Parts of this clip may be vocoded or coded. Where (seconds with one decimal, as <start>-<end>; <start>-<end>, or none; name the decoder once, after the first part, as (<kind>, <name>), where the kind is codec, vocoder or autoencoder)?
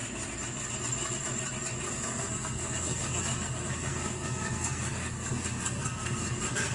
1.9-6.7 (codec, SNAC)